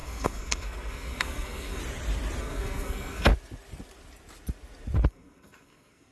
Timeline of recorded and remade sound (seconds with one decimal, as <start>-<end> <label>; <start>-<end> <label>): 0.0-1.8 remade; 1.8-2.4 recorded; 2.4-3.3 remade; 3.3-5.1 recorded; 5.1-6.1 remade